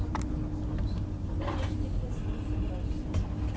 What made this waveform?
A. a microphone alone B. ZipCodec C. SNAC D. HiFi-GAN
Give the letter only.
A